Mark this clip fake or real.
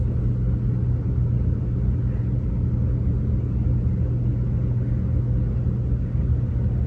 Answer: real